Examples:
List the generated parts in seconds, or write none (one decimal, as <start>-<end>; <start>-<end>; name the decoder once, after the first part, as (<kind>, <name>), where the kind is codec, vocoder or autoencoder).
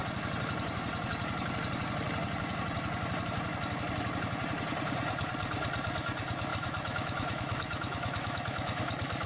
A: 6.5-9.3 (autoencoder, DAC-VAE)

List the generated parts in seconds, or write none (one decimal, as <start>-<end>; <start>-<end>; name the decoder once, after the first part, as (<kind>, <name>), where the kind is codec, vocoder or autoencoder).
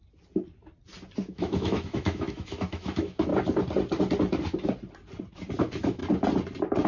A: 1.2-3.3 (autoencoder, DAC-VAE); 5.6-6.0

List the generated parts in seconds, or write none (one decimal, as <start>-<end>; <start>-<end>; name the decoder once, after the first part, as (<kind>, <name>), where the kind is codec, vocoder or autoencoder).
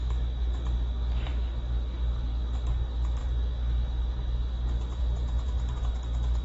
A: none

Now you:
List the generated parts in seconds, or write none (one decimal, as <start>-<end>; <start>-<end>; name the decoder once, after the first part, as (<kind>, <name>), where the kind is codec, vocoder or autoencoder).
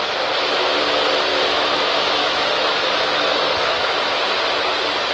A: 1.3-4.0 (autoencoder, DAC-VAE)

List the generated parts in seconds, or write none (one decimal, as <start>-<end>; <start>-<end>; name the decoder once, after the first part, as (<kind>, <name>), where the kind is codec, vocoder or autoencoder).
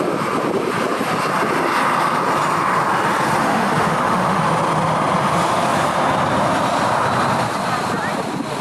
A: 3.4-4.4 (autoencoder, DAC-VAE)